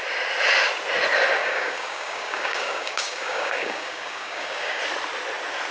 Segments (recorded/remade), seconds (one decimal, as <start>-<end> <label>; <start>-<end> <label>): 0.0-1.4 recorded; 1.4-4.8 remade; 4.8-5.7 recorded

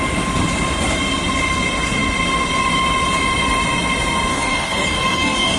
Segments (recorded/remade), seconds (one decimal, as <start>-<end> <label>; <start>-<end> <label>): 0.0-4.3 recorded; 4.3-5.6 remade

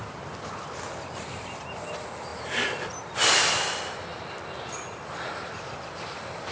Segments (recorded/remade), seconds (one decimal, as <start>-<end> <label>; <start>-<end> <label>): 0.0-6.5 recorded

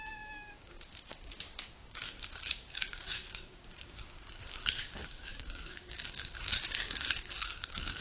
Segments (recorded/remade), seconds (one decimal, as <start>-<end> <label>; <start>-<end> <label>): 0.0-8.0 remade